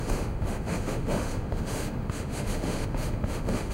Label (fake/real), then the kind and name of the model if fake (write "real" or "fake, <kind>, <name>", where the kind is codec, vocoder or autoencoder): fake, autoencoder, DAC-VAE